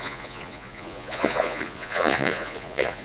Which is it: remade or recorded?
remade